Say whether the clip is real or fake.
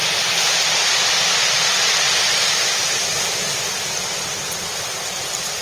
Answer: real